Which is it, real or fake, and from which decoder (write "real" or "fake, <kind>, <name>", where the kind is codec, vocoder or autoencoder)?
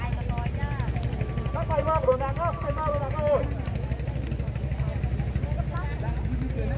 real